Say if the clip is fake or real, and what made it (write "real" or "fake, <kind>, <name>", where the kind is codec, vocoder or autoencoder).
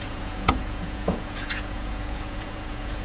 fake, vocoder, Vocos